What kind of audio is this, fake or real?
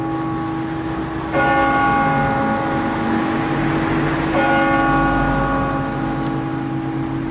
real